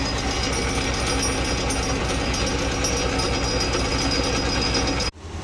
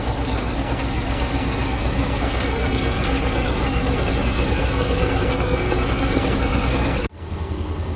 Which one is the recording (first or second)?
first